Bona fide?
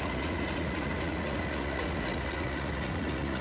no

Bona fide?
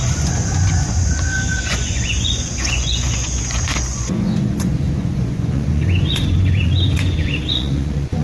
no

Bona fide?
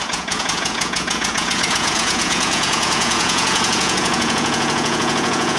no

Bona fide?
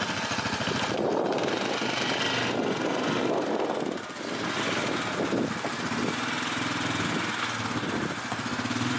yes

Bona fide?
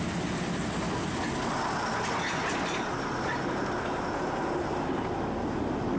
yes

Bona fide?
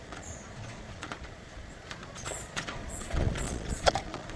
no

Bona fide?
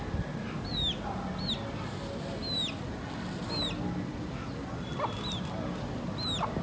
yes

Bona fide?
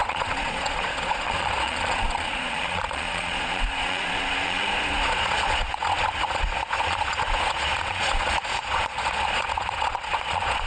no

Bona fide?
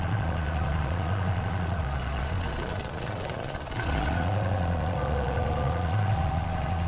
no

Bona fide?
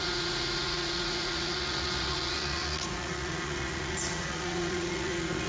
no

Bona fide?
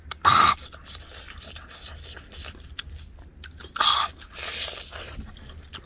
yes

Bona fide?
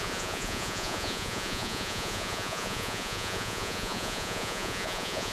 no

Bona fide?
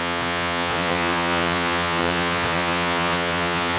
no